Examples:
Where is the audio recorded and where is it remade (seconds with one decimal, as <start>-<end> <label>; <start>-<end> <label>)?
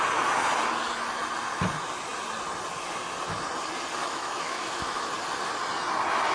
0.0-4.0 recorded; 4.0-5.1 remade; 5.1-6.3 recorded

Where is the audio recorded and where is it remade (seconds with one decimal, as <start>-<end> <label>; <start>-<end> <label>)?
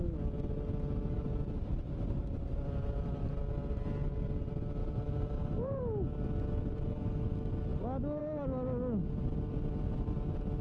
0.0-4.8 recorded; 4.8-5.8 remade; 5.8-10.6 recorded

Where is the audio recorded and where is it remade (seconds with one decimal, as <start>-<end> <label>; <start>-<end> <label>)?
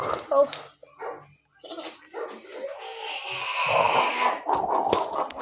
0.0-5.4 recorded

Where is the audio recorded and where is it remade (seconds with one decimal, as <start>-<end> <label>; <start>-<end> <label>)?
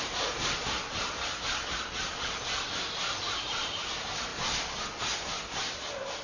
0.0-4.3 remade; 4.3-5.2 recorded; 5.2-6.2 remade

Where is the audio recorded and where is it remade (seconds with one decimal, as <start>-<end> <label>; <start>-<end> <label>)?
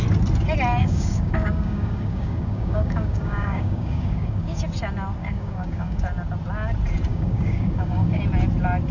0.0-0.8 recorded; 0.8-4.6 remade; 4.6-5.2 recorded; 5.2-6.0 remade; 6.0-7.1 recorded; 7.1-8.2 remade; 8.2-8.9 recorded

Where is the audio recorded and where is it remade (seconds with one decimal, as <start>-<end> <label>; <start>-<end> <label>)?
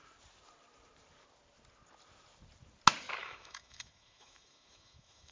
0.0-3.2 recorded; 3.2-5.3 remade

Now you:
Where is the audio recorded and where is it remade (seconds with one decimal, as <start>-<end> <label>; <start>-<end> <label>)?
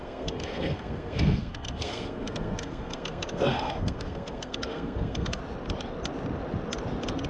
0.0-5.4 remade; 5.4-7.3 recorded